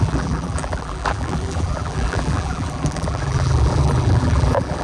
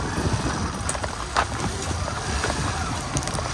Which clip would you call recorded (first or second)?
second